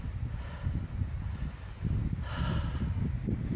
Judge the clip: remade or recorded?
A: recorded